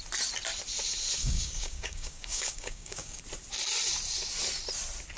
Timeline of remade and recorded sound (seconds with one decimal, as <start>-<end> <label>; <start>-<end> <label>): 0.0-1.2 recorded; 1.2-3.2 remade; 3.2-5.2 recorded

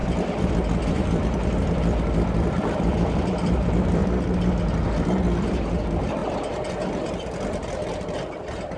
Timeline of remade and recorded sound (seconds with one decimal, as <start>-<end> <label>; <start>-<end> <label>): 0.0-0.9 recorded; 0.9-4.0 remade; 4.0-5.5 recorded; 5.5-8.8 remade